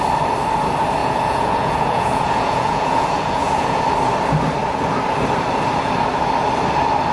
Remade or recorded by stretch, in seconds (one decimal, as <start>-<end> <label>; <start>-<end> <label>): 0.0-1.0 recorded; 1.0-3.8 remade; 3.8-7.1 recorded